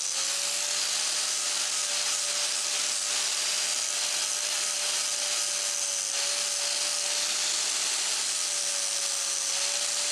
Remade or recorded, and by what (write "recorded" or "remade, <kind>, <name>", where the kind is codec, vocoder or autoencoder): recorded